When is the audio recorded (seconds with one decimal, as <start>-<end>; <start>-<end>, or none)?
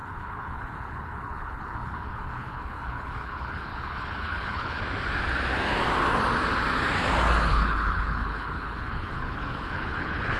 4.8-7.5